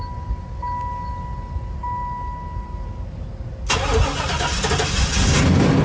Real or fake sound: real